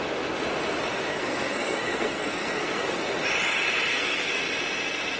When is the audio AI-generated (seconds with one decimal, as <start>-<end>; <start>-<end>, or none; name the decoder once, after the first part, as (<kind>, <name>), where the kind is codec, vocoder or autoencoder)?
1.1-3.0 (codec, SNAC); 3.9-4.4